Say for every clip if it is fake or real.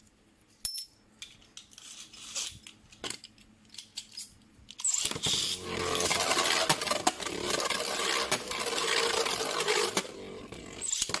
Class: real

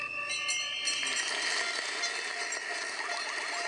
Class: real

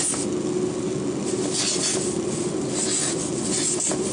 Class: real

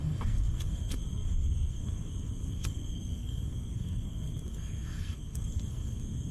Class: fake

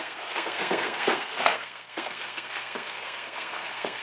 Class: fake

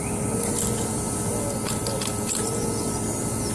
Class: real